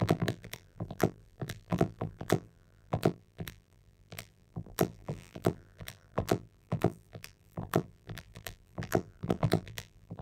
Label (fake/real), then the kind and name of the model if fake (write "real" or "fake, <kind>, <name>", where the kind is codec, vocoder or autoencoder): fake, vocoder, BigVGAN v2